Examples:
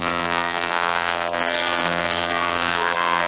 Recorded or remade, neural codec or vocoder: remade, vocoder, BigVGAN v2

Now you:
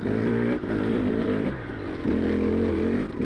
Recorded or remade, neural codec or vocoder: remade, vocoder, BigVGAN v2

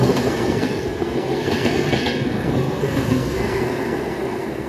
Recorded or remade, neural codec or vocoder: remade, codec, SNAC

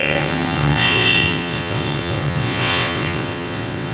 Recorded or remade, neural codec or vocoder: remade, vocoder, WaveNeXt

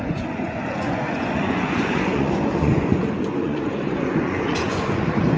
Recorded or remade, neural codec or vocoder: remade, vocoder, Vocos